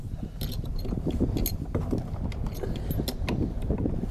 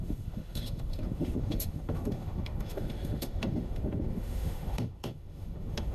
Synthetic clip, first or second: second